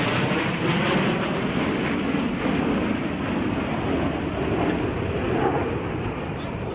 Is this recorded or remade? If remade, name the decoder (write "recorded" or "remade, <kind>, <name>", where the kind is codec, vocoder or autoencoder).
recorded